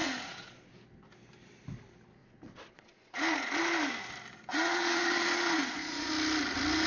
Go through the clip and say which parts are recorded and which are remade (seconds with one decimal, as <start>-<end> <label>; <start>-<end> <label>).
0.0-0.7 remade; 0.7-2.2 recorded; 2.2-3.6 remade; 3.6-4.5 recorded; 4.5-6.1 remade; 6.1-6.9 recorded